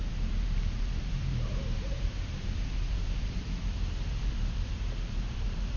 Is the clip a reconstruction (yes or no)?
yes